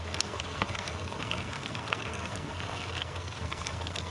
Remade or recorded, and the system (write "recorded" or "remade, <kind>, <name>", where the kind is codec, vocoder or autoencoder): remade, codec, SNAC